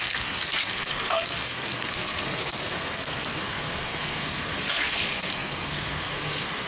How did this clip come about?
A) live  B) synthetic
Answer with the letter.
B